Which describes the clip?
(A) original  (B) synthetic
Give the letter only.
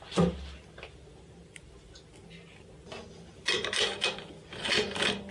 A